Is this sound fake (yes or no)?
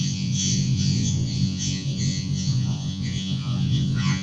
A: yes